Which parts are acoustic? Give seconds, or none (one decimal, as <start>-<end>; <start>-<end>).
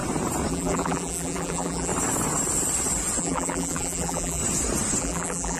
0.0-0.5; 1.9-3.2; 4.4-5.0